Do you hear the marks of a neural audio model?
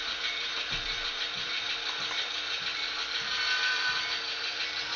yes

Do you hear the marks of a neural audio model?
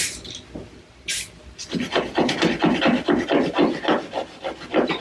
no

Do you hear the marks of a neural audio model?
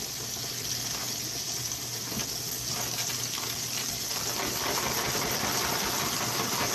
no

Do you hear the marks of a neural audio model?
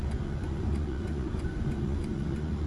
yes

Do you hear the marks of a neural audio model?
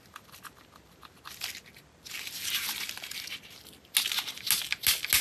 no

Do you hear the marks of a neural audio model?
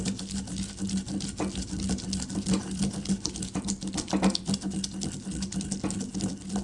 no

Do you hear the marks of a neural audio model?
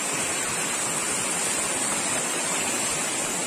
no